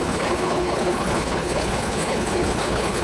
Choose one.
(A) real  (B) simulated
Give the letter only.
B